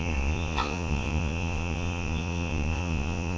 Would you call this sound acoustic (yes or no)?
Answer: no